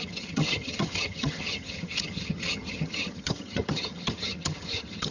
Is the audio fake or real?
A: fake